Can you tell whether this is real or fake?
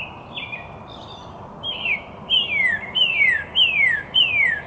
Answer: real